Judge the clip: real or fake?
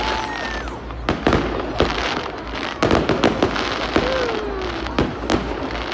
real